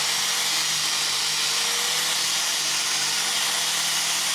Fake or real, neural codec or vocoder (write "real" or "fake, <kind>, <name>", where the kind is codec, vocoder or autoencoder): real